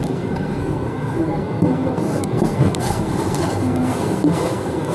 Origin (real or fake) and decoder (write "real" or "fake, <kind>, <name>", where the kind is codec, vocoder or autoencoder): fake, codec, SNAC